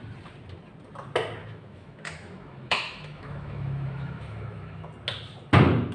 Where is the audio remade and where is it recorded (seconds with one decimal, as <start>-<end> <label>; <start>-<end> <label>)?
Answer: 0.0-1.4 recorded; 1.4-4.9 remade; 4.9-5.9 recorded